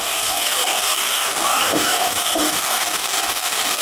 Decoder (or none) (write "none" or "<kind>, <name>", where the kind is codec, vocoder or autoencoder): codec, DAC